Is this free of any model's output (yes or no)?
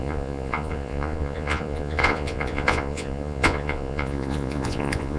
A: no